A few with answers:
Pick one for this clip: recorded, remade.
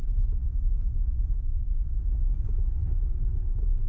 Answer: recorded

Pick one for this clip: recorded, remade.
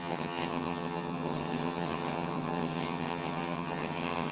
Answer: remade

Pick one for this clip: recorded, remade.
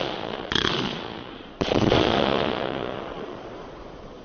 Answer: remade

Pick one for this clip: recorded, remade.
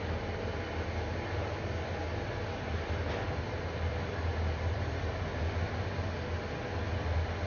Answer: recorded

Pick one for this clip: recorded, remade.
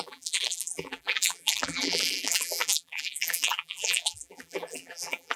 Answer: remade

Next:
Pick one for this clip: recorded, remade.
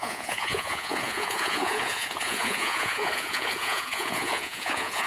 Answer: remade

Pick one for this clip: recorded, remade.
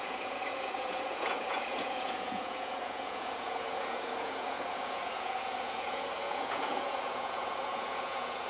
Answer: remade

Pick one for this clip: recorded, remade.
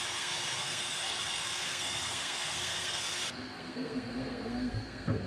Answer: remade